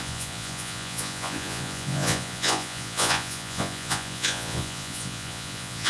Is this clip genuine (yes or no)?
no